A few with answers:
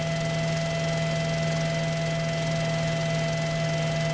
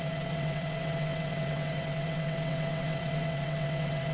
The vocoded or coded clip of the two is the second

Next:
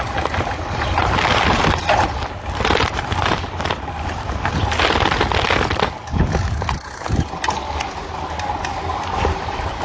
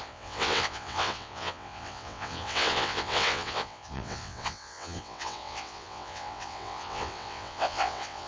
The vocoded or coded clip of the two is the second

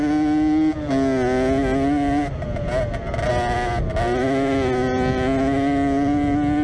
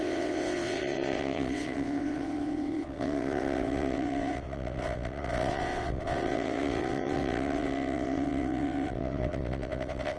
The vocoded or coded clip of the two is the second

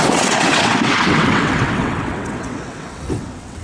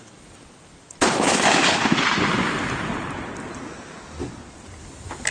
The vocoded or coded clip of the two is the first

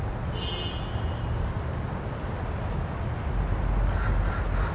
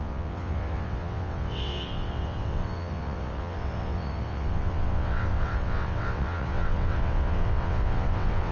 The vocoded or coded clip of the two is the second